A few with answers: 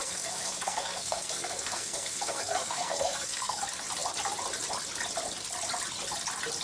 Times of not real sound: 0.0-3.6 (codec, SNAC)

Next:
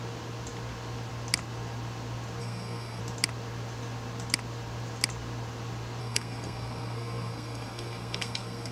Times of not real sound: 2.4-3.0 (codec, SNAC); 6.0-8.7

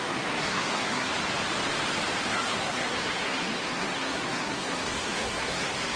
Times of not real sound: 0.0-1.1 (codec, SNAC); 2.3-6.0

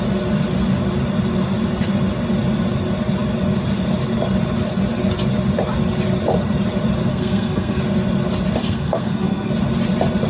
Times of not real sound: 7.1-7.8 (codec, SNAC); 8.6-9.5

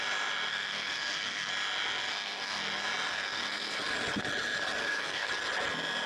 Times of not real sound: 0.5-1.5 (codec, SNAC); 2.1-2.6; 3.1-3.8; 4.8-5.3